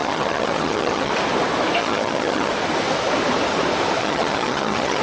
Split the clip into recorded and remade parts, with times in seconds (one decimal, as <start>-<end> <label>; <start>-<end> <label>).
0.0-1.1 remade; 1.1-1.8 recorded; 1.8-2.5 remade; 2.5-4.0 recorded; 4.0-5.0 remade